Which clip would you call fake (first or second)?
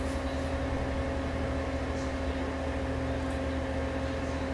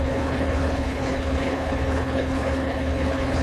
second